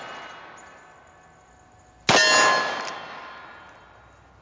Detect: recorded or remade recorded